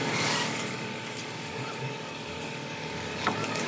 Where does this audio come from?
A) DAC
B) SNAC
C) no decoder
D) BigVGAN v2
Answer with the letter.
A